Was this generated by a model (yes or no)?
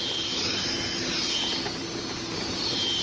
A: no